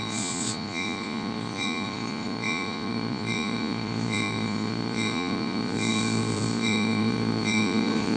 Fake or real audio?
fake